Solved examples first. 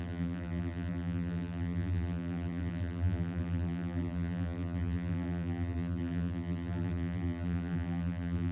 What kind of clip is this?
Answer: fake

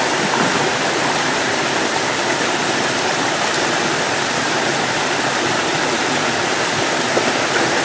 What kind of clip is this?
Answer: fake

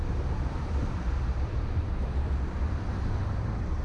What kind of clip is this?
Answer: fake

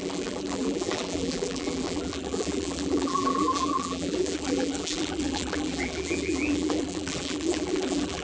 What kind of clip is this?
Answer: fake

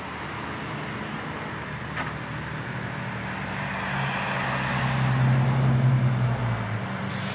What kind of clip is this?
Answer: real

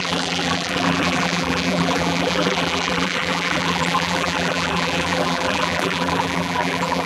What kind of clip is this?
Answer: fake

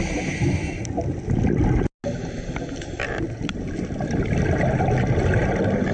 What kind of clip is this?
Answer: real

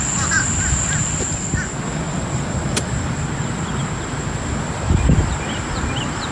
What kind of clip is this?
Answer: fake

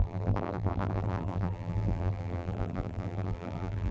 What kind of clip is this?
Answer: fake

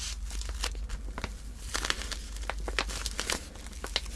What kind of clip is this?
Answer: real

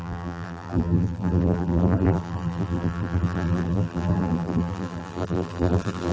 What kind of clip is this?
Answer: fake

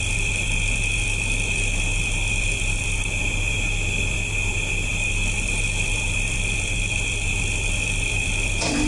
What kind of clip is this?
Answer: fake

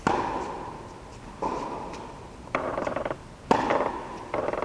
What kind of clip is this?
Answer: real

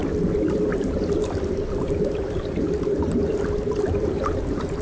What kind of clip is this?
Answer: fake